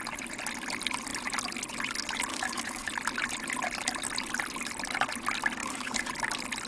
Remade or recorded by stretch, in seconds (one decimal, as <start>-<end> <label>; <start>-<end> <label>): 0.0-2.3 recorded; 2.3-2.9 remade; 2.9-5.6 recorded; 5.6-6.1 remade; 6.1-6.7 recorded